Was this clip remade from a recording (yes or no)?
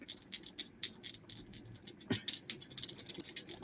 no